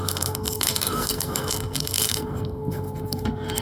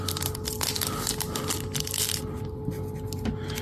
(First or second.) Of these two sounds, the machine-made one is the first